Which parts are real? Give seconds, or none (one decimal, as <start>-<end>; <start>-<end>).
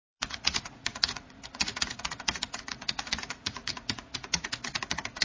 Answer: none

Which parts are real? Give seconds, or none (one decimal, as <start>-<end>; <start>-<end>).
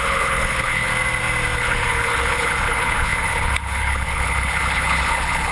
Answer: 0.9-1.6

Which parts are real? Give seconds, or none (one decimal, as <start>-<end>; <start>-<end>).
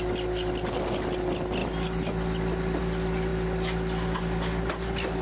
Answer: 0.0-5.2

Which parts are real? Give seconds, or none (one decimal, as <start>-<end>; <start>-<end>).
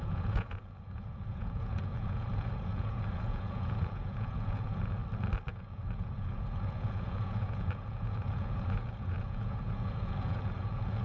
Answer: 5.0-5.5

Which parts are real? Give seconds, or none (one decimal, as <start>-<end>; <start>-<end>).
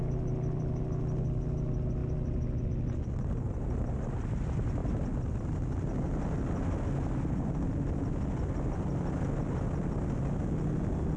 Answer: 0.0-11.2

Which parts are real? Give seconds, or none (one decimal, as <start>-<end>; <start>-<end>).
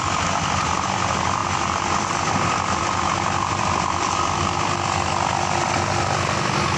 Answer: 0.0-1.4; 4.4-6.8